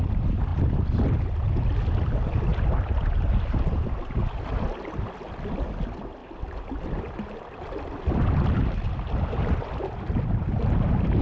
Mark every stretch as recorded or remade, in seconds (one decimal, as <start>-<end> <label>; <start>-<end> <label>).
0.0-0.5 recorded; 0.5-1.2 remade; 1.2-2.5 recorded; 2.5-4.2 remade; 4.2-6.2 recorded; 6.2-7.0 remade; 7.0-11.2 recorded